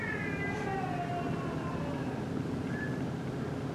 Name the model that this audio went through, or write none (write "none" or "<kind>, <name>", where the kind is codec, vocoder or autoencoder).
none